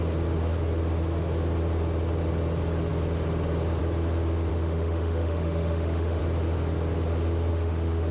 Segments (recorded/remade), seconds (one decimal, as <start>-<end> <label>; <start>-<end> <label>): 0.0-4.5 recorded; 4.5-6.2 remade; 6.2-7.5 recorded; 7.5-8.1 remade